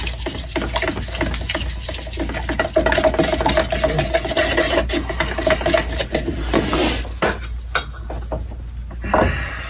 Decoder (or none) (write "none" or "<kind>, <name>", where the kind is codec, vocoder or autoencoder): none